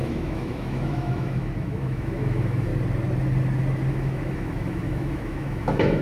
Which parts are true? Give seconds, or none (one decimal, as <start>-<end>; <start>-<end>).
2.7-3.9

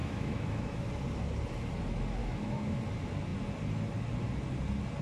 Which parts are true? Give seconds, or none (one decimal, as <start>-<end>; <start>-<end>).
0.9-2.2; 2.8-5.0

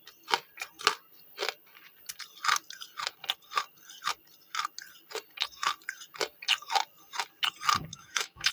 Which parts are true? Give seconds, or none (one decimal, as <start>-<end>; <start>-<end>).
0.0-7.9

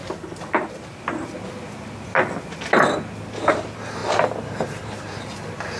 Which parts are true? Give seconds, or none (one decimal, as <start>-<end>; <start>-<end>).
0.0-5.8

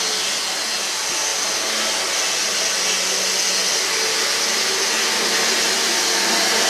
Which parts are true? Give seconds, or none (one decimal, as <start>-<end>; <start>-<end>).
0.0-6.7

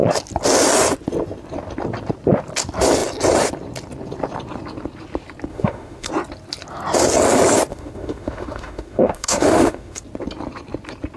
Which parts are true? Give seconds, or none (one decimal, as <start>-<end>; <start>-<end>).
0.0-5.5; 6.1-7.7; 10.0-11.2

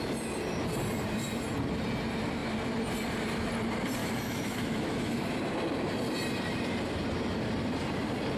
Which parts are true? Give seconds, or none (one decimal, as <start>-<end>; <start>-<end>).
0.0-4.0; 5.3-8.4